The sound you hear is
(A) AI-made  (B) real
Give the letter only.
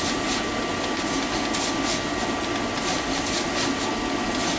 B